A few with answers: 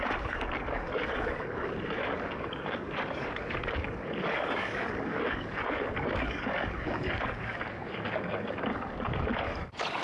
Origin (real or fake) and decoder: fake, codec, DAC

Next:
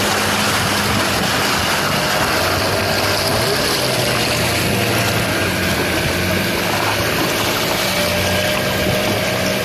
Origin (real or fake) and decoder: real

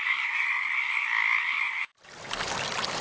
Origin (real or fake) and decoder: real